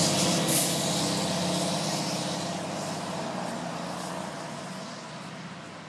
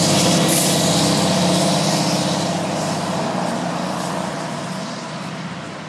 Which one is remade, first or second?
second